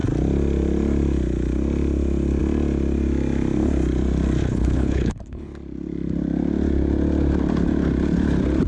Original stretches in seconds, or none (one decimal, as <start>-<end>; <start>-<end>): 0.0-4.4; 5.5-8.7